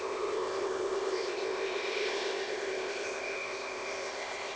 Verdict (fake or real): fake